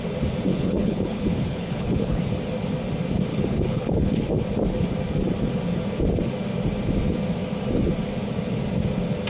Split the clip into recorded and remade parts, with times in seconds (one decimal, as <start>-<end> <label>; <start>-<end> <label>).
0.0-0.5 recorded; 0.5-2.2 remade; 2.2-3.3 recorded; 3.3-4.3 remade; 4.3-9.3 recorded